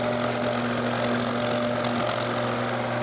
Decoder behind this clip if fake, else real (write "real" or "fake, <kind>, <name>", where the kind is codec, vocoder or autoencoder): real